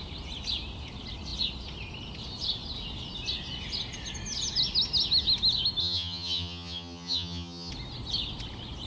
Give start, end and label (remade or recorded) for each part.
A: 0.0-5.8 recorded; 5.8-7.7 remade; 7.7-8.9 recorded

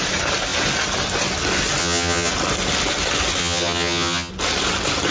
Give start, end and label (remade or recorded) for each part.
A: 0.0-1.8 recorded; 1.8-2.3 remade; 2.3-3.4 recorded; 3.4-4.3 remade; 4.3-5.1 recorded

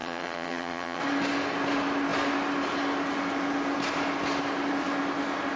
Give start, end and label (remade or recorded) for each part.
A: 0.0-1.0 remade; 1.0-5.6 recorded

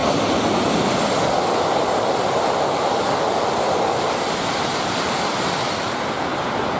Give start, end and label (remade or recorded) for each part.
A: 0.0-6.8 recorded